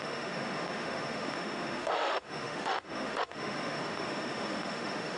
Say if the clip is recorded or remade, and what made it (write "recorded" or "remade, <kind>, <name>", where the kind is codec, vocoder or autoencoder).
remade, autoencoder, DAC-VAE